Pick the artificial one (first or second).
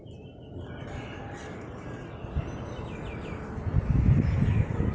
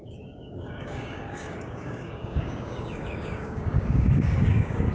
second